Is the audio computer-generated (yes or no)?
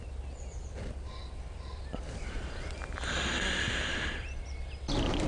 yes